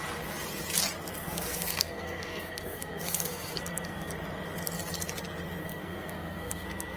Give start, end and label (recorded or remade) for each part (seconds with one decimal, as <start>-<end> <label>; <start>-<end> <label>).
0.0-1.2 recorded; 1.2-4.1 remade; 4.1-5.6 recorded; 5.6-7.0 remade